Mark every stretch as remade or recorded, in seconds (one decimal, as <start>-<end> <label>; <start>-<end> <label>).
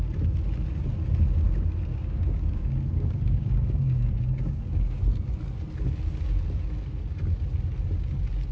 0.0-1.9 recorded; 1.9-5.0 remade; 5.0-8.5 recorded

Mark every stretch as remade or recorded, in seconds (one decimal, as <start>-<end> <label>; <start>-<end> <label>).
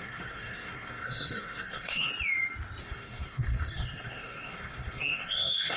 0.0-2.1 remade; 2.1-2.8 recorded; 2.8-5.8 remade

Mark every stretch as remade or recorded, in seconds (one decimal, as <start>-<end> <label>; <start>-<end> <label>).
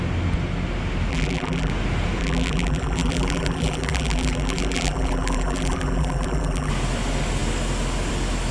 0.0-1.1 recorded; 1.1-1.7 remade; 1.7-2.2 recorded; 2.2-6.7 remade; 6.7-8.5 recorded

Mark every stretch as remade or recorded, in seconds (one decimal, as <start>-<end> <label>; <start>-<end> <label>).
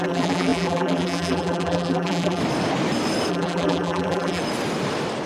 0.0-2.4 remade; 2.4-3.3 recorded; 3.3-4.4 remade; 4.4-5.3 recorded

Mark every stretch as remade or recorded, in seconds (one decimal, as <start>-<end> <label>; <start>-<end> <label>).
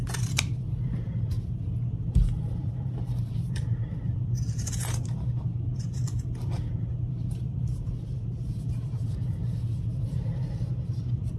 0.0-11.4 remade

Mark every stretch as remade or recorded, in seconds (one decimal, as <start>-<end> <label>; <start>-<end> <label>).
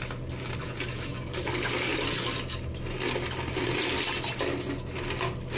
0.0-1.1 recorded; 1.1-1.7 remade; 1.7-5.6 recorded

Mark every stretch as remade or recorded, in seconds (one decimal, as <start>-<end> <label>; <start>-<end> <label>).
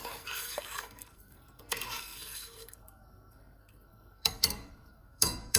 0.0-5.6 remade